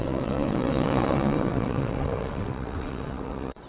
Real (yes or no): no